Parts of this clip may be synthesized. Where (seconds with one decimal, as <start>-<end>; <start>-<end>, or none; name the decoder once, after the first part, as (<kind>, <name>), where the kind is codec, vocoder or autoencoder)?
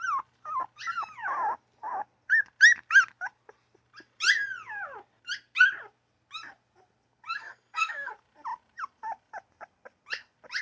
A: 7.4-8.1 (codec, SNAC)